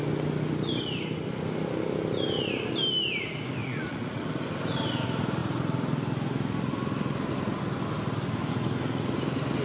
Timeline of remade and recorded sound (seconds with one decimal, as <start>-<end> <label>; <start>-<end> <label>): 0.0-3.6 recorded; 3.6-4.2 remade; 4.2-9.6 recorded